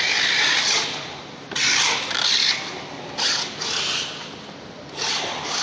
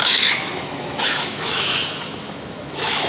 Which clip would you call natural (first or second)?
first